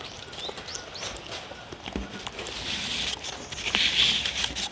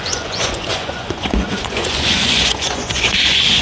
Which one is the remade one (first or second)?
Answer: second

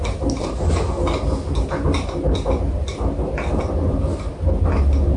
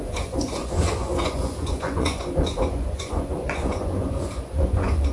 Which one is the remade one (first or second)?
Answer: second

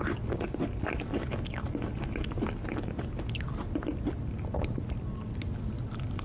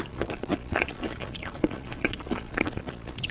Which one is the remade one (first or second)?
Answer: second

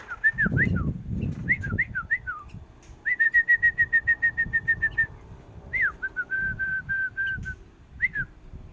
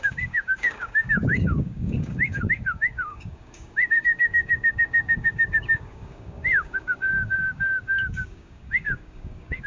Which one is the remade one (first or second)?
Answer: second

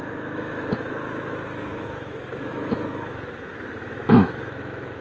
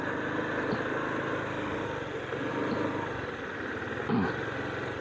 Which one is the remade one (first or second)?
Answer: first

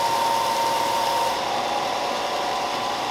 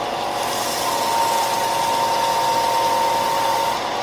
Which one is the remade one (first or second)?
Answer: first